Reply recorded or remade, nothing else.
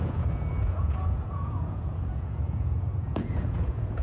remade